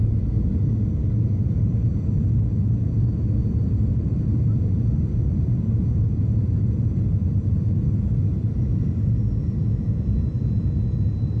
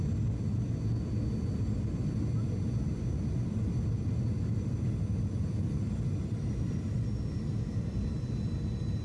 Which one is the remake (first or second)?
first